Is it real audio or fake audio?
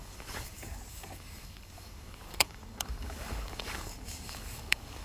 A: fake